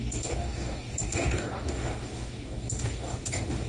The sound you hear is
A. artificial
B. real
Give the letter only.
A